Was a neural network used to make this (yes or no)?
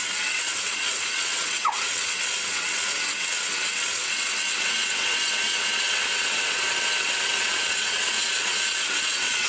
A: yes